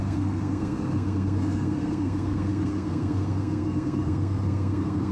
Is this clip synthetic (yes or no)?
yes